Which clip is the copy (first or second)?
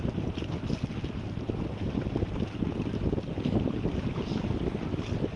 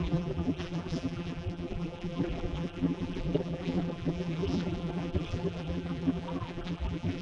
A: second